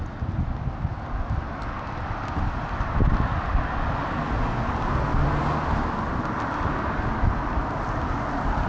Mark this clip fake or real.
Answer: real